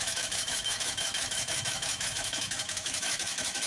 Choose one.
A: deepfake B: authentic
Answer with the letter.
A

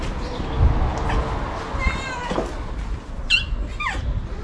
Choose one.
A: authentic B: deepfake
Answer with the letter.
A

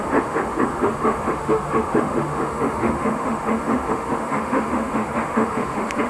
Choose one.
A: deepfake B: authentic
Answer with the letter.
A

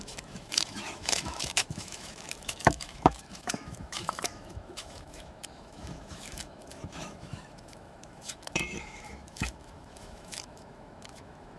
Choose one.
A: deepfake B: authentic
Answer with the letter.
A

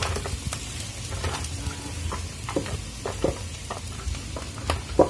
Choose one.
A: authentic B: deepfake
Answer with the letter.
A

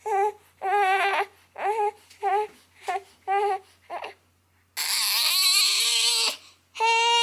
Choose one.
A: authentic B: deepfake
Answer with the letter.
A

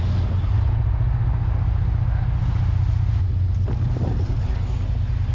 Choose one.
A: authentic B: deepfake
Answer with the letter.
A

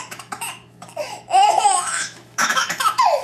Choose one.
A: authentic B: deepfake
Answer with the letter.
B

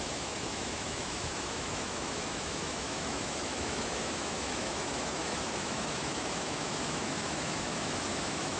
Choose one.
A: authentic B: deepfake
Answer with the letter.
B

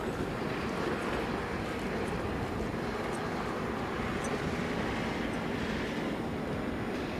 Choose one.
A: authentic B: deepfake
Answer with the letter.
A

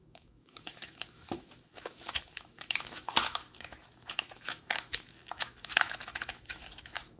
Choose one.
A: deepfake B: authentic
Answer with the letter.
A